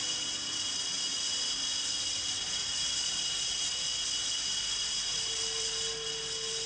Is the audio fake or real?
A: real